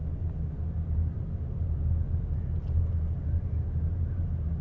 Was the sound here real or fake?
real